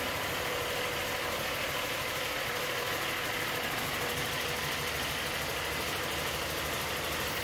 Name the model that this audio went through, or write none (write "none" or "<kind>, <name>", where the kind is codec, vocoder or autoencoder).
none